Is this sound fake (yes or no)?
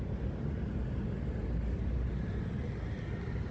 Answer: no